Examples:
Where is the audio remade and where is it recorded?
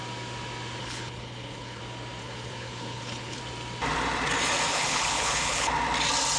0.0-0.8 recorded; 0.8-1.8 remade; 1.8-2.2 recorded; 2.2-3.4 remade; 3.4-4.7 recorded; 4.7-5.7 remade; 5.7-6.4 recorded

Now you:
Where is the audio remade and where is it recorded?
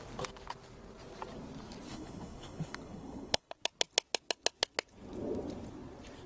0.0-1.9 recorded; 1.9-3.5 remade; 3.5-6.3 recorded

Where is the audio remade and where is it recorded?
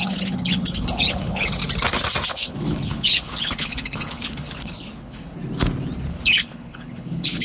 0.0-1.6 remade; 1.6-2.3 recorded; 2.3-5.4 remade; 5.4-6.1 recorded; 6.1-7.4 remade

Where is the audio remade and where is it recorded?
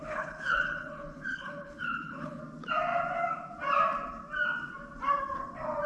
0.0-2.4 remade; 2.4-5.9 recorded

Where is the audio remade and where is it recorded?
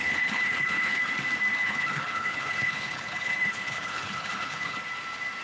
0.0-1.0 remade; 1.0-1.6 recorded; 1.6-4.8 remade; 4.8-5.4 recorded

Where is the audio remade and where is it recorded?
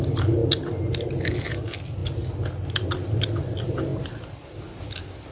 0.0-5.3 recorded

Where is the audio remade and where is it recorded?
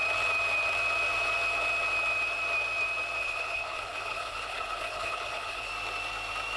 0.0-3.2 recorded; 3.2-5.7 remade; 5.7-6.6 recorded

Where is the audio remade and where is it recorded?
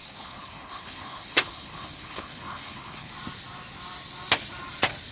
0.0-3.1 remade; 3.1-5.1 recorded